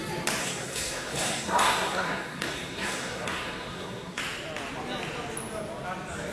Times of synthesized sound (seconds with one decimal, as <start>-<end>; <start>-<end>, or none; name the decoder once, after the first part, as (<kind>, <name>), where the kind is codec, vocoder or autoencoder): 0.4-4.2 (codec, SNAC)